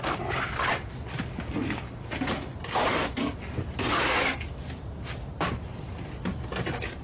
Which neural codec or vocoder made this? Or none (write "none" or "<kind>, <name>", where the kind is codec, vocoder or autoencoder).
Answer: none